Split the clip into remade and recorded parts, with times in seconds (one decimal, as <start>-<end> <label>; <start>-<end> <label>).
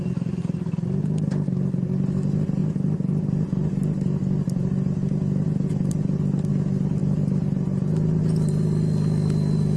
0.0-9.8 recorded